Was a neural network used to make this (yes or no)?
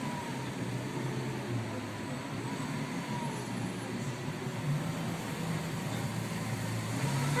no